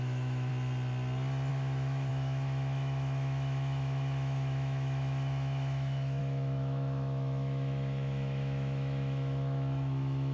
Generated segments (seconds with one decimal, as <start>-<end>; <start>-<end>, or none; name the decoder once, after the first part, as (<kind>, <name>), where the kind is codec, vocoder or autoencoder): 0.0-0.5 (autoencoder, DAC-VAE); 1.5-10.3